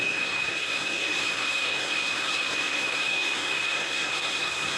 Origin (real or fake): fake